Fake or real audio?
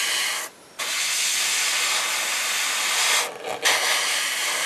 real